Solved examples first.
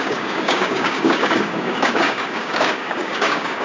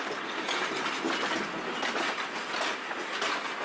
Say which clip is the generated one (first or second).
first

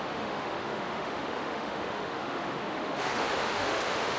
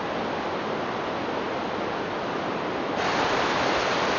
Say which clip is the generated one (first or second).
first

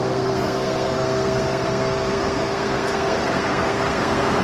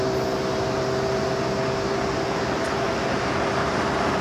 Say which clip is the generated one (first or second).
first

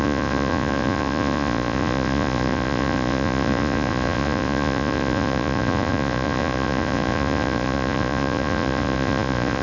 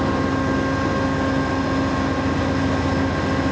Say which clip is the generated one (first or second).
first